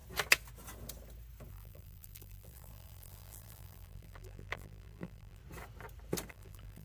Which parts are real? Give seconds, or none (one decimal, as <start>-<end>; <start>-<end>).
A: 0.0-1.5; 5.4-6.3